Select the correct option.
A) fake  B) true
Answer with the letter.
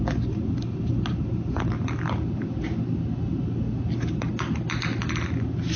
B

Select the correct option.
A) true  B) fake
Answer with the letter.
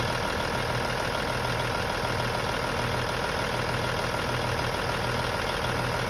A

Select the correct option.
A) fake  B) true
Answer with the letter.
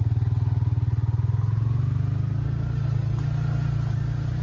B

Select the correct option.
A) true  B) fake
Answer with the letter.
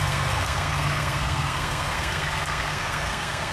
B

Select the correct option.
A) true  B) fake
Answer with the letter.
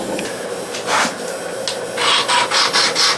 A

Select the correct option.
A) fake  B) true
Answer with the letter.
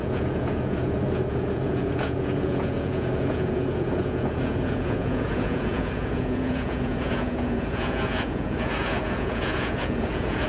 A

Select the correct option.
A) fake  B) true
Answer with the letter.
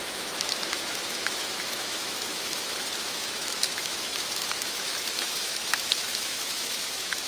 A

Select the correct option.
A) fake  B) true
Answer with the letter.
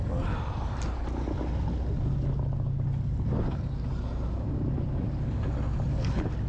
B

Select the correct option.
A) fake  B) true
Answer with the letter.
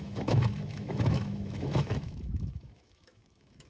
A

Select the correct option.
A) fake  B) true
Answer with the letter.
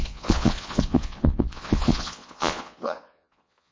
A